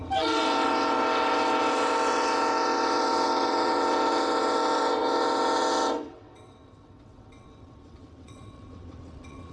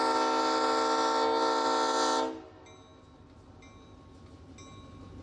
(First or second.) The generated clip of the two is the first